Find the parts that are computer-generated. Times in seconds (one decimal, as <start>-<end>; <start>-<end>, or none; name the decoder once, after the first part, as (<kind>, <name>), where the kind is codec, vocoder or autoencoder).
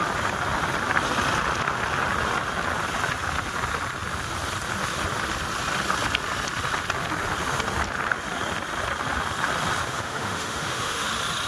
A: 9.8-11.1 (autoencoder, DAC-VAE)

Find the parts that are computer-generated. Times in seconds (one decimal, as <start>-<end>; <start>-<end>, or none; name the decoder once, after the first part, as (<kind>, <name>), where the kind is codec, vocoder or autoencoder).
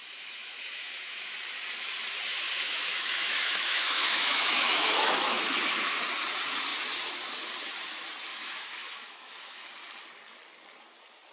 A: 0.0-1.3 (autoencoder, DAC-VAE); 2.3-6.0; 8.3-9.7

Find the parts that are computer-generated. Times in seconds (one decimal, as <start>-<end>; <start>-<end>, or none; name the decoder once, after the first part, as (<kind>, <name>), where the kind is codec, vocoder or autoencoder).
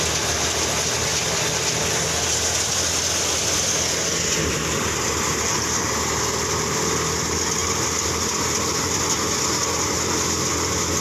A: none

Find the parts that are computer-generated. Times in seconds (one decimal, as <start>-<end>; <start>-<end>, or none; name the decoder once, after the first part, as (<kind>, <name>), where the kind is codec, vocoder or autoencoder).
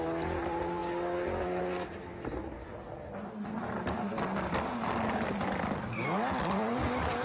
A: none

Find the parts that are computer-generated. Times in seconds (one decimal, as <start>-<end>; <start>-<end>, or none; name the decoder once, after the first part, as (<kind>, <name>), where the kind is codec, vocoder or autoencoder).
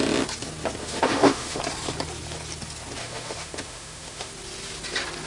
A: 0.8-1.6 (autoencoder, DAC-VAE); 3.0-4.3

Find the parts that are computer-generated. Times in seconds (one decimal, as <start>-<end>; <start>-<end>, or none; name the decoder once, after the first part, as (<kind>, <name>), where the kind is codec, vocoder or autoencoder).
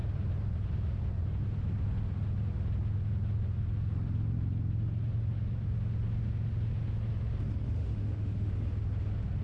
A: 7.8-8.5 (autoencoder, DAC-VAE)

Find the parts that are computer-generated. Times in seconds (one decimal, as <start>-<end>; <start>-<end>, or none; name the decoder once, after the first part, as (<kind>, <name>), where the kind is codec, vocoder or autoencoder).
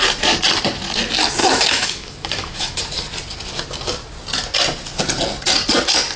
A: 1.4-2.8 (autoencoder, DAC-VAE)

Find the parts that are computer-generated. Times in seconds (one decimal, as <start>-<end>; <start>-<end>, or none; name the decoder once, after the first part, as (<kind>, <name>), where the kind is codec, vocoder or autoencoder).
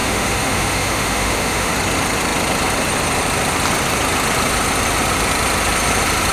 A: 0.0-1.7 (autoencoder, DAC-VAE)